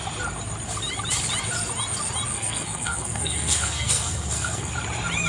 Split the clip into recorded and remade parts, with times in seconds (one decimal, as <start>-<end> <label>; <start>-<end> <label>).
0.0-2.3 recorded; 2.3-4.7 remade; 4.7-5.3 recorded